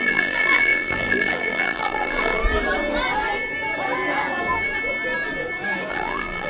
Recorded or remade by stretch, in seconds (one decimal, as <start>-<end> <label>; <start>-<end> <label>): 0.0-2.4 remade; 2.4-5.9 recorded; 5.9-6.5 remade